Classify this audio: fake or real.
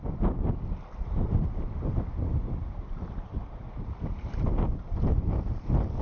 real